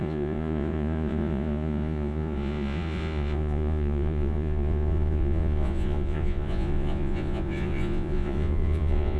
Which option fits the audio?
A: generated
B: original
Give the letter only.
A